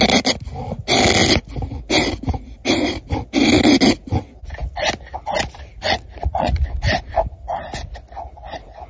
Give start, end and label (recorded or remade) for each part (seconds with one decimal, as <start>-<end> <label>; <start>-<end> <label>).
0.0-5.7 recorded; 5.7-6.6 remade; 6.6-8.9 recorded